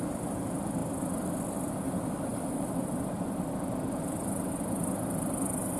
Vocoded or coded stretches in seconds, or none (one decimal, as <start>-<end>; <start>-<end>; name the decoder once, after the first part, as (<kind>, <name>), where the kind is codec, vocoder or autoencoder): 0.0-0.8 (vocoder, BigVGAN v2); 1.7-5.8

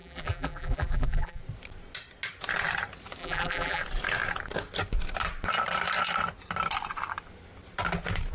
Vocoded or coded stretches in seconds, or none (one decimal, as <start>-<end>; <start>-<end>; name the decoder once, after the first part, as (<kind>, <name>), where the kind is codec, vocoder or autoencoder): 0.0-1.4 (vocoder, BigVGAN v2); 3.2-3.8